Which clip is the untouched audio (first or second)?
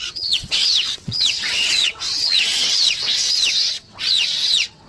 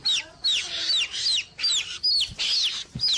second